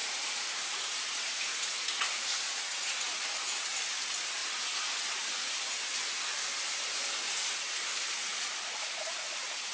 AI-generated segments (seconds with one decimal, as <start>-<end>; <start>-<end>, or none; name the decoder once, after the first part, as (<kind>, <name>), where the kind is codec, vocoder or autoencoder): 0.0-3.6 (vocoder, Vocos); 4.4-5.6; 8.3-9.2